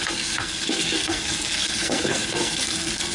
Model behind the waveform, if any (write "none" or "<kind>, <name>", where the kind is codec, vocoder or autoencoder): codec, SNAC